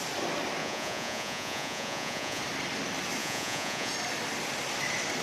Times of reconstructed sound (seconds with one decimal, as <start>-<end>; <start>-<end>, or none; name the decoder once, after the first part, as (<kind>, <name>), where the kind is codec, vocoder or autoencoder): 0.6-2.4 (vocoder, Vocos); 3.2-3.9